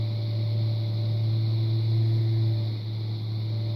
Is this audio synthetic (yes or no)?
no